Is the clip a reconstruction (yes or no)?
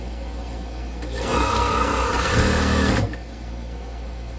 yes